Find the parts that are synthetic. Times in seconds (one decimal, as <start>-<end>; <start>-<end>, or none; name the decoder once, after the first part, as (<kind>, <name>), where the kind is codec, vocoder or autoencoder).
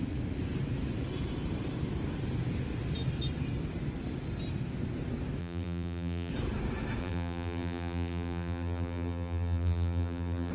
5.4-6.3 (vocoder, BigVGAN v2); 7.0-10.5